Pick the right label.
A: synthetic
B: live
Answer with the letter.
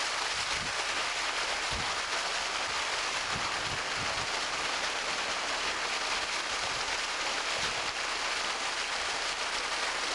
B